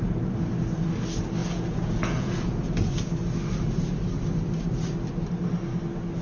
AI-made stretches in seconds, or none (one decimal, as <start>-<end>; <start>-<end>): 1.4-2.7